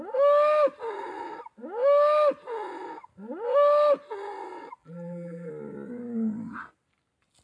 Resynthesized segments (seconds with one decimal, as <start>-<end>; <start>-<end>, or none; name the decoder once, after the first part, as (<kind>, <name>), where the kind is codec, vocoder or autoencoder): 4.8-5.5 (vocoder, BigVGAN v2)